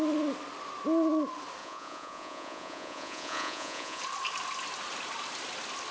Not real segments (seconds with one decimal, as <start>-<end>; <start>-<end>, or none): 1.6-4.0

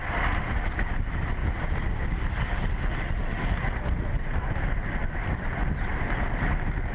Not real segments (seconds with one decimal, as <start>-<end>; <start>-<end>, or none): none

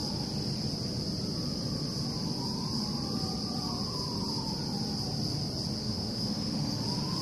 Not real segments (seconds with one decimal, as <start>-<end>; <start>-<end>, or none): 5.8-6.8

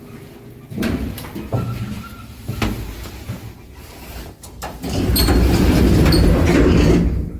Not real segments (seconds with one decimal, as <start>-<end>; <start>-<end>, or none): 4.0-5.6

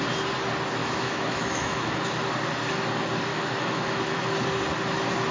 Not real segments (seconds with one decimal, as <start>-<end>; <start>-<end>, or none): 0.8-2.0; 3.3-4.2